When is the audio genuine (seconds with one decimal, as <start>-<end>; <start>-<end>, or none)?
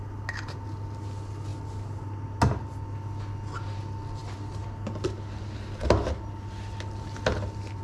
0.0-7.8